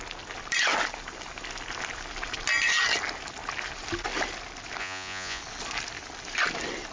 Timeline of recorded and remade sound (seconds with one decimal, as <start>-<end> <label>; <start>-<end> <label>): 0.0-4.8 recorded; 4.8-5.4 remade; 5.4-6.9 recorded